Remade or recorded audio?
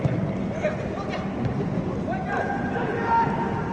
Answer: recorded